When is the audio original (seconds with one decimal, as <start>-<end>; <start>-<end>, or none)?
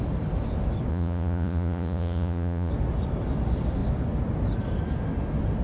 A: 0.0-0.9; 2.7-5.6